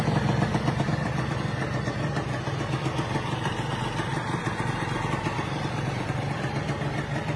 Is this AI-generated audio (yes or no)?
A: yes